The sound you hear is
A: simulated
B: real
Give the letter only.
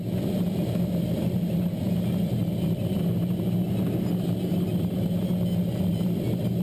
B